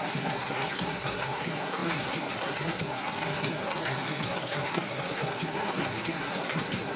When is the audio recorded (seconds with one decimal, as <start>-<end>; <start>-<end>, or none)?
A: none